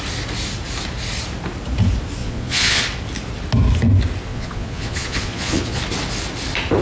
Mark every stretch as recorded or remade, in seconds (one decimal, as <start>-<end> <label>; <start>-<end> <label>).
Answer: 0.0-2.2 recorded; 2.2-2.8 remade; 2.8-4.3 recorded; 4.3-5.8 remade; 5.8-6.8 recorded